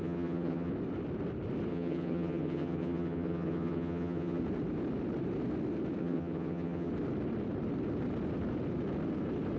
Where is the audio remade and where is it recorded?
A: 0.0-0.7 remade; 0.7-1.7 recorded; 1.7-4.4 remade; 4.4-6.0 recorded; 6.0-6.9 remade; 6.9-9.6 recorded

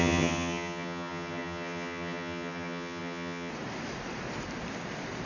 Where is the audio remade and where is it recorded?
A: 0.0-3.5 remade; 3.5-5.3 recorded

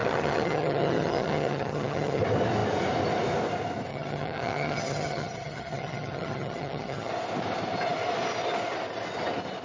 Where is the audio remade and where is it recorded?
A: 0.0-2.2 remade; 2.2-3.9 recorded; 3.9-7.1 remade; 7.1-9.6 recorded

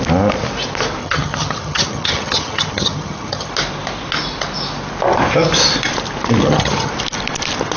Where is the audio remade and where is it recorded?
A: 0.0-1.0 recorded; 1.0-3.5 remade; 3.5-6.4 recorded; 6.4-6.9 remade; 6.9-7.8 recorded

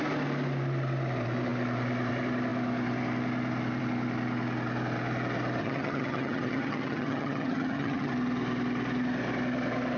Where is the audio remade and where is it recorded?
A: 0.0-5.6 recorded; 5.6-8.1 remade; 8.1-10.0 recorded

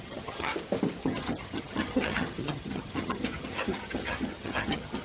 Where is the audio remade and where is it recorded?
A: 0.0-0.5 remade; 0.5-1.0 recorded; 1.0-5.0 remade